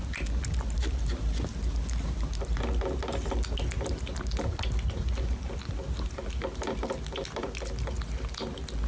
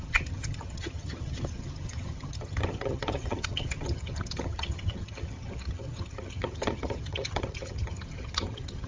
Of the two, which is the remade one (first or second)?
second